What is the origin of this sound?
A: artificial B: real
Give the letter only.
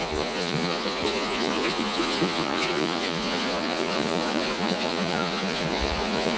A